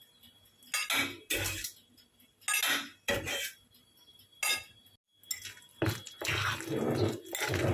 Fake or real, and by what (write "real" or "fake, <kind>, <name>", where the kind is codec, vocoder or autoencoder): real